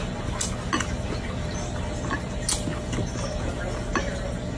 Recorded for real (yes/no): yes